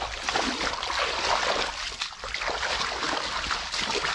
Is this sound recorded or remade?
recorded